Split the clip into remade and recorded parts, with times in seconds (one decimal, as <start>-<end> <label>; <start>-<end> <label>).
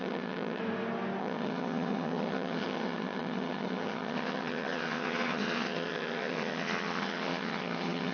0.0-0.6 remade; 0.6-1.2 recorded; 1.2-8.1 remade